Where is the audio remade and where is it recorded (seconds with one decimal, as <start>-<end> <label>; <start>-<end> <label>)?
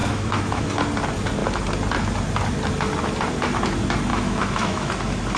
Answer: 0.0-0.7 remade; 0.7-4.1 recorded; 4.1-4.9 remade; 4.9-5.4 recorded